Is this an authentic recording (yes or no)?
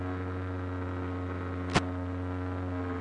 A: yes